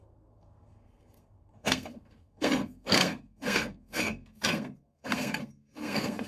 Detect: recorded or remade remade